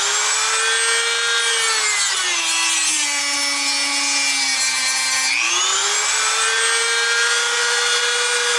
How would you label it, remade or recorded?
recorded